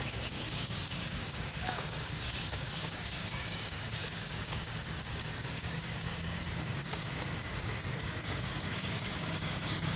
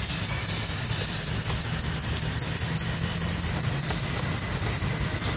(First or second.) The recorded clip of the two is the second